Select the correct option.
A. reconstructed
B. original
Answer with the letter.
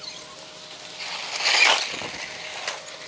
B